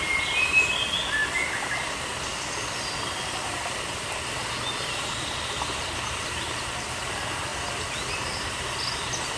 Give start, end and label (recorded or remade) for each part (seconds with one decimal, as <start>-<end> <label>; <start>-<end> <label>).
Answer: 0.0-9.4 recorded